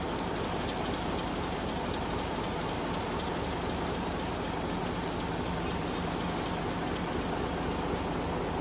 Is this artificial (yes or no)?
no